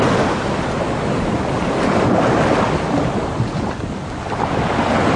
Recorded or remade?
recorded